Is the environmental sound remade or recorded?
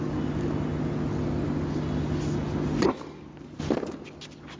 recorded